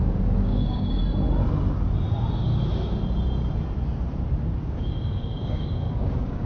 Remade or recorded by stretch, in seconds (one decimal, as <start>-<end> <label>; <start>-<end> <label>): 0.0-1.0 remade; 1.0-4.6 recorded; 4.6-6.5 remade